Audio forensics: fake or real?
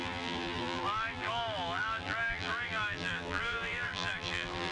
fake